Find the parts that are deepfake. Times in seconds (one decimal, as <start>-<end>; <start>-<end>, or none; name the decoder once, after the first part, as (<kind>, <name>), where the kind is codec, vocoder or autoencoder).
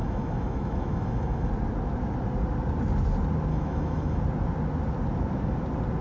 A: 0.0-1.5 (autoencoder, DAC-VAE); 3.5-4.2